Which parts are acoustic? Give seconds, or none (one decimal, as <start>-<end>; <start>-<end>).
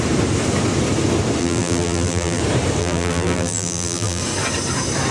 0.0-1.4; 2.4-2.8; 4.2-5.1